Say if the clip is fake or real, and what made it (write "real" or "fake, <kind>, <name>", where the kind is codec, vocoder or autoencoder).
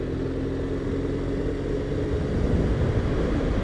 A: real